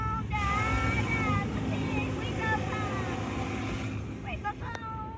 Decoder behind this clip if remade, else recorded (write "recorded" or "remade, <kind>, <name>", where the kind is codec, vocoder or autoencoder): recorded